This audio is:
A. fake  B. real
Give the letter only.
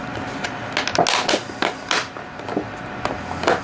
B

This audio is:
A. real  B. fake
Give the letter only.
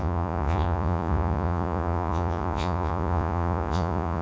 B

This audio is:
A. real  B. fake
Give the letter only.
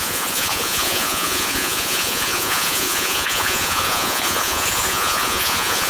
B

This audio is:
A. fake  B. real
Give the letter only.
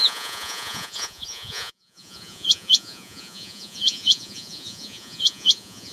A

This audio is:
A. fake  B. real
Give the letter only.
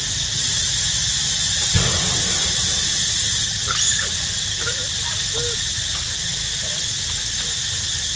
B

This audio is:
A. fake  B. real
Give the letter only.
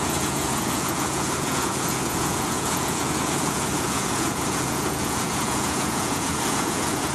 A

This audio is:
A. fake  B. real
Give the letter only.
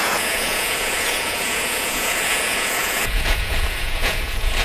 A